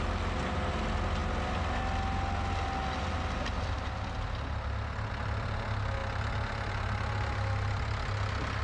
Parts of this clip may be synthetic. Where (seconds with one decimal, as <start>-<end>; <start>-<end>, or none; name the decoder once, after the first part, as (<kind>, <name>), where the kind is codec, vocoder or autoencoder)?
none